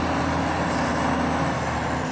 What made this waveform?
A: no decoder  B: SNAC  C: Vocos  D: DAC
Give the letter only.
A